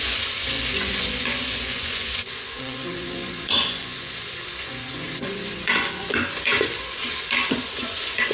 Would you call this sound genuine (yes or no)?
no